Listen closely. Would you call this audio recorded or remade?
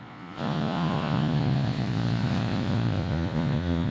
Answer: remade